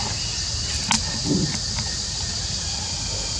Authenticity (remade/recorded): recorded